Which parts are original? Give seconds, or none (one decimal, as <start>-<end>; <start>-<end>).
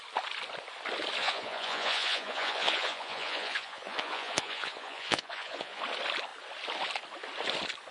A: 0.0-1.2; 5.8-7.9